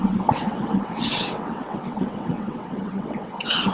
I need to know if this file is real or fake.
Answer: fake